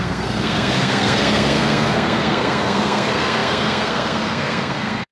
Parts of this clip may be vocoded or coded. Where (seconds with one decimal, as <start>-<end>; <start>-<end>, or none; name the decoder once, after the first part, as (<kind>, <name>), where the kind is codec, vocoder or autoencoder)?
0.0-5.1 (codec, SNAC)